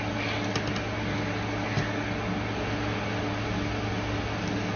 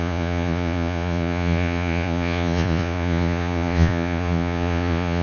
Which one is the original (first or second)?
first